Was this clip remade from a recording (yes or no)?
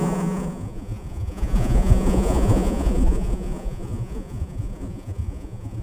yes